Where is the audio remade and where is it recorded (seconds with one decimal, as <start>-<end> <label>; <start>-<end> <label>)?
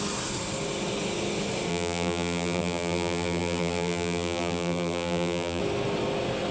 0.0-1.7 recorded; 1.7-5.6 remade; 5.6-6.5 recorded